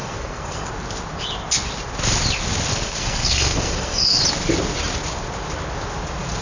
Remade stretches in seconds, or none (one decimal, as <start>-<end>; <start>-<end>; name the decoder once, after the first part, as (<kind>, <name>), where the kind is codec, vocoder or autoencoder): 0.0-0.7 (codec, SNAC); 2.7-4.2